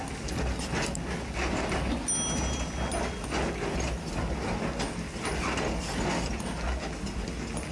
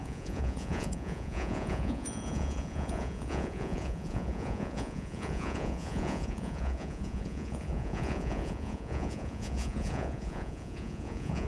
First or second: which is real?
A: first